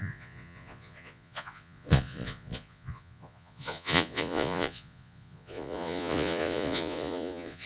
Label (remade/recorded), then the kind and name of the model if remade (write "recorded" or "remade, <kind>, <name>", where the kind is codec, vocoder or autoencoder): remade, vocoder, Vocos